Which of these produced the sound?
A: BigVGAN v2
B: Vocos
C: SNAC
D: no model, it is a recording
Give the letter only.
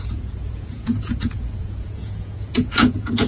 B